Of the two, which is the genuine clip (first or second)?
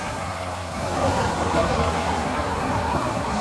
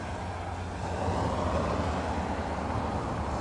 second